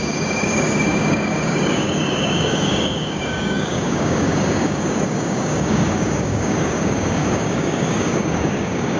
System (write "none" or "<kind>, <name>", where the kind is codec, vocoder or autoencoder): codec, DAC